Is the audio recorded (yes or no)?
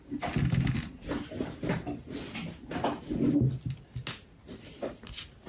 yes